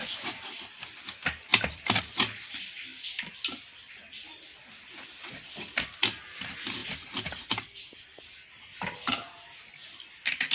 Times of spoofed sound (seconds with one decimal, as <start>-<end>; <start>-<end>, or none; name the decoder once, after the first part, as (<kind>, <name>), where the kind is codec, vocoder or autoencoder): none